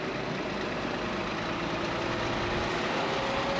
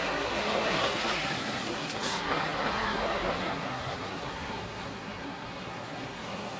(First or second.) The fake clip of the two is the second